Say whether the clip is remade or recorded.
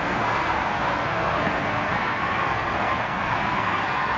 remade